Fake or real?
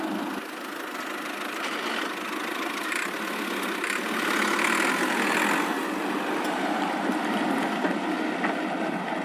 real